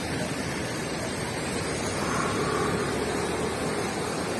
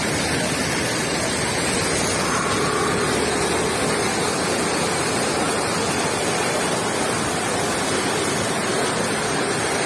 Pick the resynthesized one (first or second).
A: first